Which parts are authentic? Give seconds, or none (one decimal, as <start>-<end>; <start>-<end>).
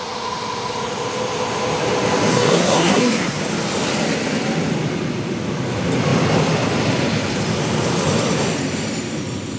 0.0-2.3; 3.4-9.6